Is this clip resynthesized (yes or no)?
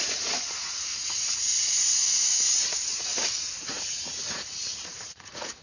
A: yes